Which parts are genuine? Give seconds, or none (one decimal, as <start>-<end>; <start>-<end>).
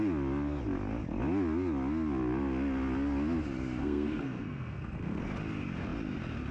0.0-3.8; 5.2-6.5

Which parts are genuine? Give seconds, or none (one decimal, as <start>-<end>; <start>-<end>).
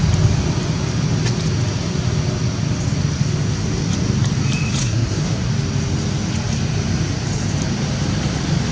0.0-4.8; 5.5-8.7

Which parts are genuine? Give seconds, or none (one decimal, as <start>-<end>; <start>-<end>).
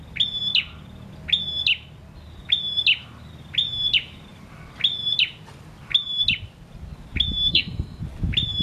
0.0-7.5; 8.0-8.6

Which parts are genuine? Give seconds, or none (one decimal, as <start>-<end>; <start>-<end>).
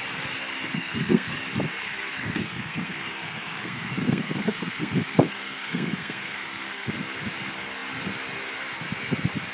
0.0-0.7; 1.3-1.8; 6.9-9.5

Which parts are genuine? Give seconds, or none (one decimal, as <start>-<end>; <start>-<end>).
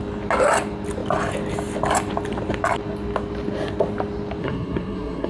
0.0-4.4